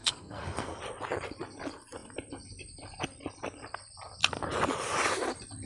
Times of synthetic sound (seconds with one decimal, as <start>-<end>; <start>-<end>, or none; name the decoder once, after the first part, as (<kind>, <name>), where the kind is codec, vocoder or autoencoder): 0.0-0.8 (codec, SNAC)